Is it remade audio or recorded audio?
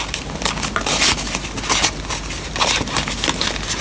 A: recorded